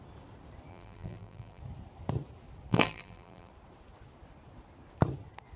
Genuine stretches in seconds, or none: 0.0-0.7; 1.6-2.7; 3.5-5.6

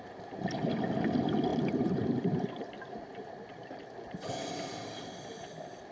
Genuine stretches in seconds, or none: 0.0-1.5; 3.7-5.9

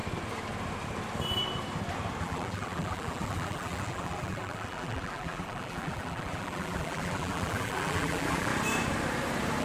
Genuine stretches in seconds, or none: 0.0-2.2; 8.5-9.6

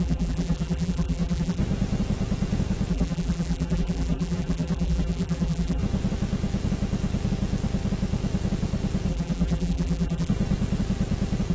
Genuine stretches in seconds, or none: 1.6-2.9; 5.8-9.1; 10.3-11.5

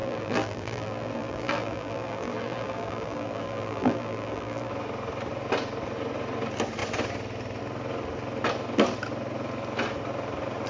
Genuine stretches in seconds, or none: 4.7-10.7

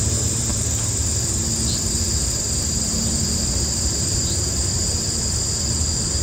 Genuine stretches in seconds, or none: 0.5-1.8

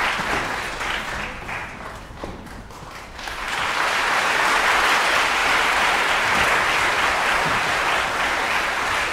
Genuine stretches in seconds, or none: 0.0-1.6; 4.3-5.4; 6.1-9.1

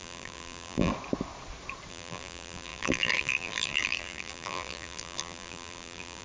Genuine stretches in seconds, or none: 0.9-1.9